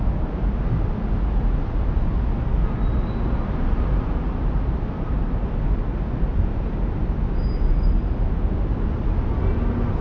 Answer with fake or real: real